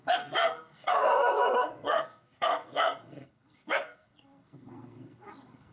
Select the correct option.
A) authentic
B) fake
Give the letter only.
B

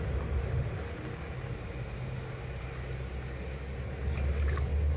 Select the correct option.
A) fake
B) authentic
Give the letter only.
B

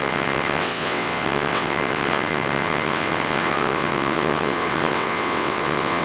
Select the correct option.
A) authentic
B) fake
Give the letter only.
B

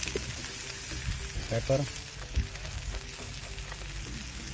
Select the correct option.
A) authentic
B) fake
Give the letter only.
A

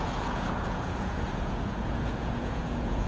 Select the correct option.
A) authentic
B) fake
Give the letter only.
B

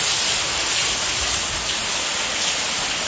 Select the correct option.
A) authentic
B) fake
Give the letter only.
A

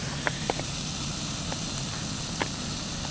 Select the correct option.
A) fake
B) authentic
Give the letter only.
B